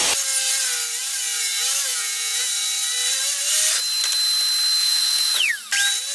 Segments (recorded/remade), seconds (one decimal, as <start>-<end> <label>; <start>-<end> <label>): 0.0-1.9 recorded; 1.9-2.5 remade; 2.5-4.8 recorded; 4.8-5.5 remade; 5.5-6.1 recorded